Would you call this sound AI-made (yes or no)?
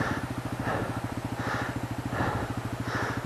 no